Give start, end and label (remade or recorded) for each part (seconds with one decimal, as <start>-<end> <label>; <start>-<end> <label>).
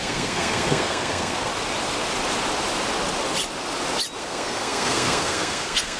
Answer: 0.0-1.5 remade; 1.5-4.2 recorded; 4.2-6.0 remade